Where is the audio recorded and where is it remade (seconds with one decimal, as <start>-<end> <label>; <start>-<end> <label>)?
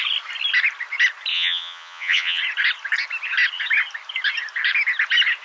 0.0-1.3 recorded; 1.3-2.4 remade; 2.4-5.4 recorded